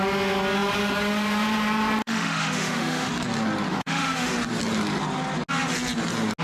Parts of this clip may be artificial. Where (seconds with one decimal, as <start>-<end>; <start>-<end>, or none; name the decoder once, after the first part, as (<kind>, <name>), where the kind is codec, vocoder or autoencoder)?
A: 2.0-3.1 (autoencoder, DAC-VAE); 3.7-4.3